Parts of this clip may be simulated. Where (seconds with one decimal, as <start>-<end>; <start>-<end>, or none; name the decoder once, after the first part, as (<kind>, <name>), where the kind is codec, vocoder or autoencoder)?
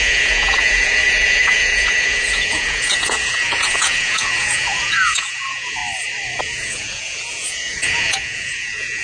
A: 0.0-5.8 (vocoder, Vocos); 6.4-9.0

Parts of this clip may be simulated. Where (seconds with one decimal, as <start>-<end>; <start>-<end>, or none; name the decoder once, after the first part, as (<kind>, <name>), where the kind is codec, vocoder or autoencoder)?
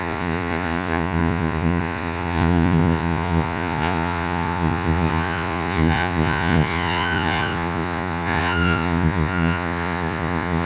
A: 0.0-10.7 (vocoder, Vocos)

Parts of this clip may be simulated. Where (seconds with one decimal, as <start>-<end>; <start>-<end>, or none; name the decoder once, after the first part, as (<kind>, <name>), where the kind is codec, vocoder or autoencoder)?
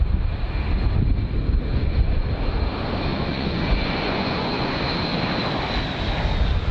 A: 1.7-2.3 (vocoder, Vocos); 3.1-4.8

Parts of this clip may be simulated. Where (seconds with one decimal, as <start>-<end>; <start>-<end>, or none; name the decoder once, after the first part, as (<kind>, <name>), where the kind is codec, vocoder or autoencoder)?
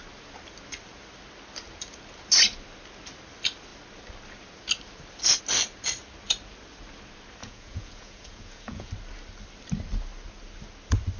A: 7.4-8.9 (vocoder, Vocos)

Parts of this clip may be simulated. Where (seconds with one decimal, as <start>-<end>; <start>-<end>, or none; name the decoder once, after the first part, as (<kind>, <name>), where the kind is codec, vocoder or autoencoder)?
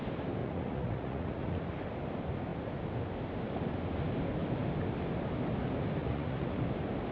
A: 0.4-1.6 (vocoder, Vocos); 6.0-6.6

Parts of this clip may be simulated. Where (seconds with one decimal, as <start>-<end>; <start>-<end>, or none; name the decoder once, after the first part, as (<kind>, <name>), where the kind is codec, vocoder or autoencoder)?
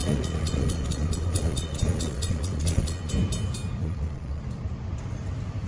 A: 0.0-3.1 (vocoder, Vocos); 3.8-4.4